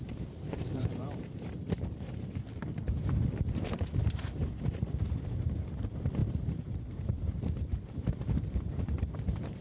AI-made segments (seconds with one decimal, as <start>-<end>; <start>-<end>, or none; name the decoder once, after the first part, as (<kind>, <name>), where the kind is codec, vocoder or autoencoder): 0.0-2.6 (vocoder, BigVGAN v2); 3.5-9.6